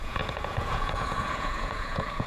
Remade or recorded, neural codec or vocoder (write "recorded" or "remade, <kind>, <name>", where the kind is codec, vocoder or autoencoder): remade, vocoder, Vocos